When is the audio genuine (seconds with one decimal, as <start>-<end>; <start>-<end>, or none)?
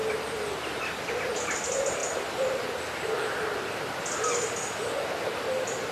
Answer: 0.0-5.9